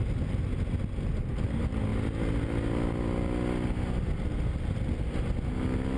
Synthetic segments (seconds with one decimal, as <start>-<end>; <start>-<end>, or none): none